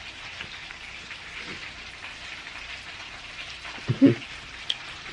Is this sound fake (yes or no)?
no